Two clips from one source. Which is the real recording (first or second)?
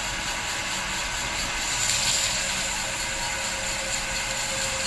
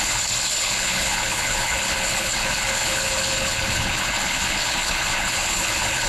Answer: first